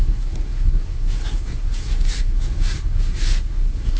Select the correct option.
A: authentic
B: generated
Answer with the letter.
B